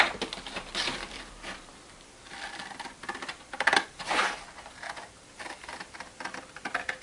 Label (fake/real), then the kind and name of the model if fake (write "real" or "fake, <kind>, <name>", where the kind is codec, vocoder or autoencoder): fake, vocoder, BigVGAN v2